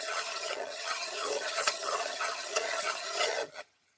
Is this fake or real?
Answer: fake